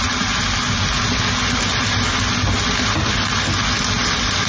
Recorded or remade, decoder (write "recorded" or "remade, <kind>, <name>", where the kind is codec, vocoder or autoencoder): recorded